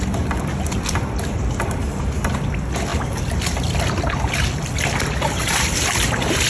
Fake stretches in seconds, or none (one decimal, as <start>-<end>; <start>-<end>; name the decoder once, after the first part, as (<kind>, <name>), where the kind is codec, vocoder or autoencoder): none